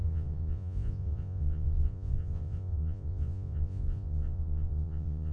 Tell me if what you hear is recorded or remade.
remade